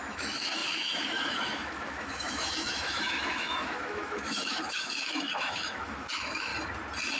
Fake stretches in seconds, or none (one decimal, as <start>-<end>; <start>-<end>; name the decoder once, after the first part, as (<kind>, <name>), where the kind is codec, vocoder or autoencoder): 0.0-6.5 (autoencoder, DAC-VAE)